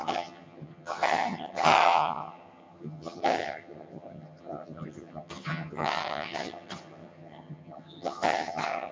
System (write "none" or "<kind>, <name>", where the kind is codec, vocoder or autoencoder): vocoder, HiFi-GAN